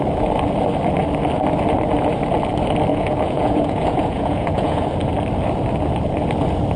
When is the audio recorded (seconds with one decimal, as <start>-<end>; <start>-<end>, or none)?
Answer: 0.0-2.9; 4.8-6.8